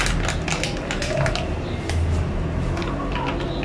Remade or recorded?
recorded